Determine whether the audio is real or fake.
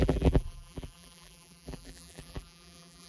fake